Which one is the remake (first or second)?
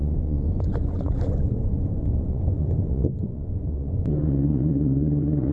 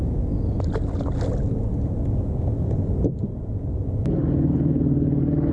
first